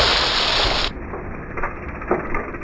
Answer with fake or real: real